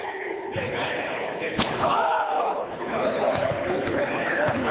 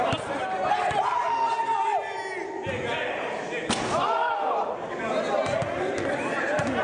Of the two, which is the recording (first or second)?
second